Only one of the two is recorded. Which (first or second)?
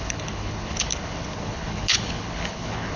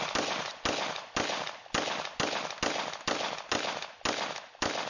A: second